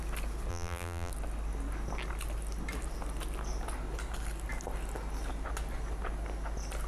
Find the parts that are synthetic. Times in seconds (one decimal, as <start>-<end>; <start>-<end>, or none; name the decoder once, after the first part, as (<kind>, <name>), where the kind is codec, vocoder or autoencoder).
0.5-1.1 (vocoder, BigVGAN v2)

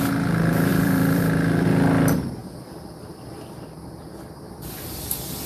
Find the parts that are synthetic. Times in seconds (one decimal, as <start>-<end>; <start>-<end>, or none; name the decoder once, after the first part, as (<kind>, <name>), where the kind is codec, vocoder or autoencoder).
0.7-1.2 (vocoder, BigVGAN v2)

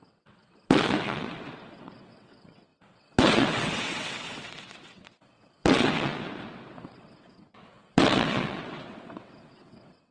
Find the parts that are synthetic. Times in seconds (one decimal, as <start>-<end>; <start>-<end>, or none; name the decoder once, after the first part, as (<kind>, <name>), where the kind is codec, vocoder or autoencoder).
0.0-10.1 (vocoder, WaveNeXt)

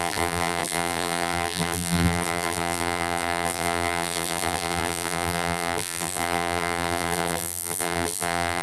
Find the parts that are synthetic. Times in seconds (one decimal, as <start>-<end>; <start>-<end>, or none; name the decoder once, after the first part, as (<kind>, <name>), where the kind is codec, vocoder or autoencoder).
0.0-8.6 (vocoder, BigVGAN v2)

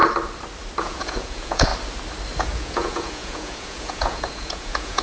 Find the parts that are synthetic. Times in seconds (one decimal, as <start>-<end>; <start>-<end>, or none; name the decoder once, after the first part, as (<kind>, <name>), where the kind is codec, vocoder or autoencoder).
0.8-1.7 (vocoder, Vocos); 2.4-5.0

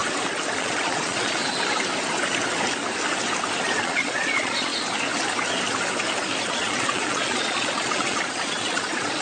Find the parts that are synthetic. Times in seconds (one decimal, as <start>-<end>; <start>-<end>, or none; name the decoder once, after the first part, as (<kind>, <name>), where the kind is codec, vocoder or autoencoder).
0.6-1.4 (vocoder, Vocos); 3.8-4.7; 6.5-9.2